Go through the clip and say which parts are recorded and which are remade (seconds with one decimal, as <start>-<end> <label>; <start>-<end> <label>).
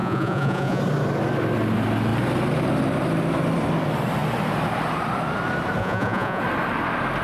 0.0-0.8 remade; 0.8-5.8 recorded; 5.8-6.4 remade; 6.4-7.2 recorded